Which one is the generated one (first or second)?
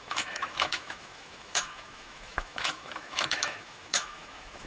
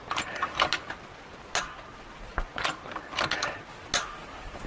first